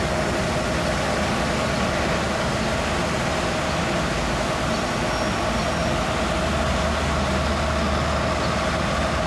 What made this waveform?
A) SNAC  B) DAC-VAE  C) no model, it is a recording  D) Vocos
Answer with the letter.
C